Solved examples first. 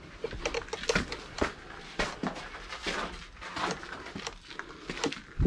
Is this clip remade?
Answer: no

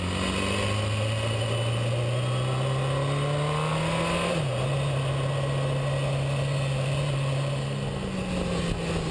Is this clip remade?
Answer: no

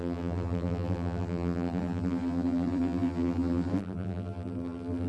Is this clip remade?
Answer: yes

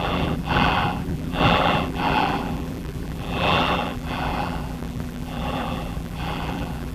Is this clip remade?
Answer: yes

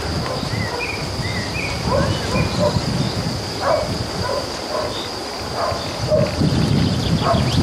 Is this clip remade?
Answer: no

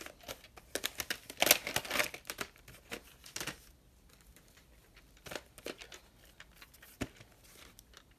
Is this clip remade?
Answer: no